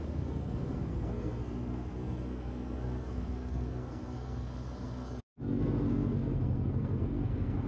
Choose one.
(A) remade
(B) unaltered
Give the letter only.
A